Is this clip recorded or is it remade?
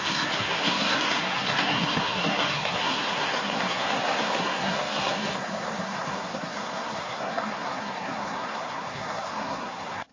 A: remade